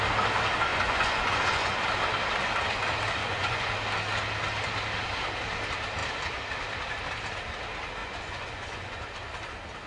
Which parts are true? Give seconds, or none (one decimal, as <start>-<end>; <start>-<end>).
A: 0.0-0.7; 1.8-3.2; 3.7-8.0; 9.0-9.9